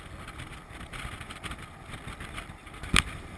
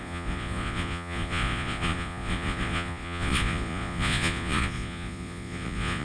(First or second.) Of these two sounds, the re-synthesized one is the second